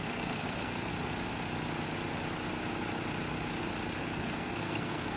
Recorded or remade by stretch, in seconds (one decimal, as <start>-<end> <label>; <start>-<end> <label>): 0.0-0.9 remade; 0.9-4.0 recorded; 4.0-5.2 remade